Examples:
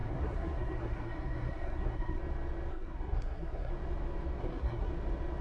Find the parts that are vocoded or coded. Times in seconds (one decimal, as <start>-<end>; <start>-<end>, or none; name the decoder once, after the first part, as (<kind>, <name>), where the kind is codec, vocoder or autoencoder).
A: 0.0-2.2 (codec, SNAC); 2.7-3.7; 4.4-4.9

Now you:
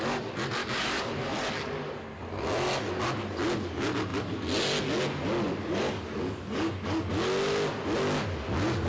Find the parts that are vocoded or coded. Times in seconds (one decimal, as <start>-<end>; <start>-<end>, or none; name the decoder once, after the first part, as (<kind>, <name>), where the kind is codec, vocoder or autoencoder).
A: 0.6-1.1 (codec, DAC); 5.6-7.1

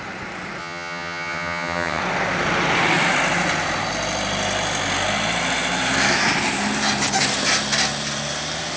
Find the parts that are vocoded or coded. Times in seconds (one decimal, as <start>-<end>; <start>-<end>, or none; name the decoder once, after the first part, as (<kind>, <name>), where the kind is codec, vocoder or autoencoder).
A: 0.6-2.0 (vocoder, HiFi-GAN)